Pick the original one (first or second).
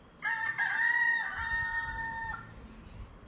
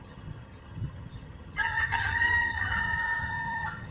first